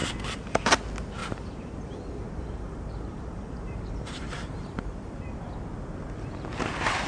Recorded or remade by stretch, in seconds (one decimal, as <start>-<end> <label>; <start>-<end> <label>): 0.0-1.2 recorded; 1.2-5.5 remade; 5.5-7.1 recorded